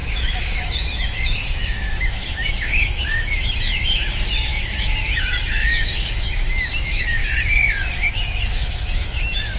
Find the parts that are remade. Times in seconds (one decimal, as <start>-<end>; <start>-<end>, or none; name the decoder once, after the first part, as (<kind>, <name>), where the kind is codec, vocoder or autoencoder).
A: 0.0-7.2 (autoencoder, DAC-VAE); 8.1-9.6